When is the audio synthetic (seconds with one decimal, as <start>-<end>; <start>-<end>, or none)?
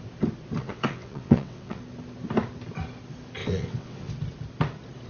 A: 0.6-1.8; 3.4-4.1